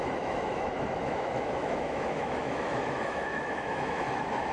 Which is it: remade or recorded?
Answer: remade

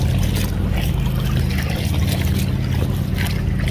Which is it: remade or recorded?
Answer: recorded